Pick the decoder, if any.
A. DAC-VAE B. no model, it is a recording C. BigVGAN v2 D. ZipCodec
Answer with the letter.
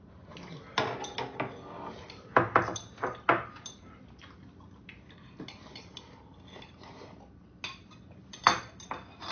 B